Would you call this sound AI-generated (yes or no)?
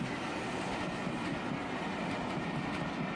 no